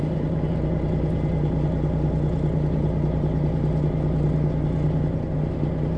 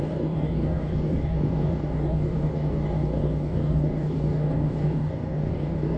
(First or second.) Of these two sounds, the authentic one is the first